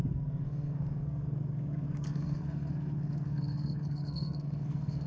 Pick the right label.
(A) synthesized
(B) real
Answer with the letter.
A